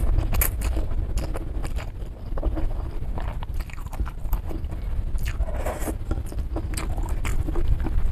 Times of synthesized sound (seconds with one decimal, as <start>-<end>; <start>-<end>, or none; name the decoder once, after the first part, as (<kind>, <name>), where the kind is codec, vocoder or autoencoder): 1.6-5.0 (vocoder, BigVGAN v2); 5.8-6.5; 7.3-8.1